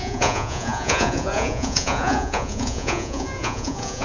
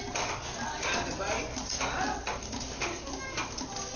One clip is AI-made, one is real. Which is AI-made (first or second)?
first